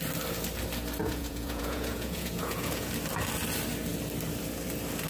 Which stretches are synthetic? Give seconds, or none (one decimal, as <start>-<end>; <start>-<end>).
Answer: 1.0-2.9